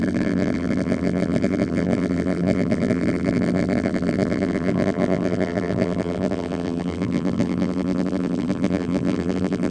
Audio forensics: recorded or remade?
remade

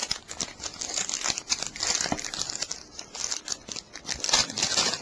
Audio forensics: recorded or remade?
recorded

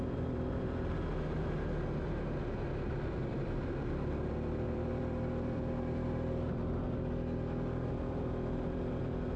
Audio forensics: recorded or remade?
remade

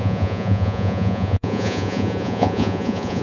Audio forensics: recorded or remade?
remade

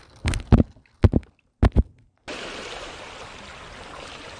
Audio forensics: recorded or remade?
recorded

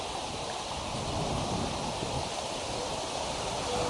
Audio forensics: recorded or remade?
recorded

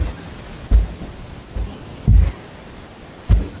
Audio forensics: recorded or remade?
recorded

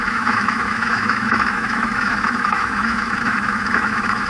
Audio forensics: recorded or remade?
remade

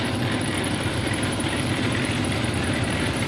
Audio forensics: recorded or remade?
remade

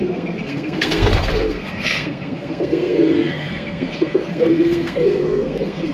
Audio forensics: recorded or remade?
remade